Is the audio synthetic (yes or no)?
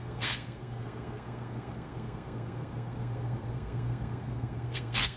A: yes